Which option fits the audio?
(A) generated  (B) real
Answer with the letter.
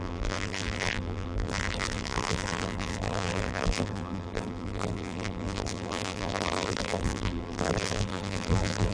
A